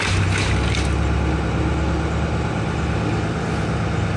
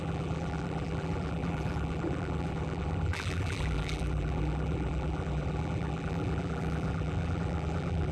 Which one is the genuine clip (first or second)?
first